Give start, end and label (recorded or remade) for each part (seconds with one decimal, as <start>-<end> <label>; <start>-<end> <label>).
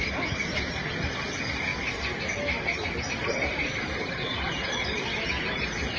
0.0-6.0 recorded